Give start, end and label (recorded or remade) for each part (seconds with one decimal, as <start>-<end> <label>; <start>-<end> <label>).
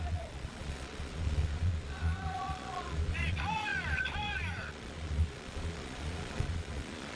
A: 0.0-7.2 remade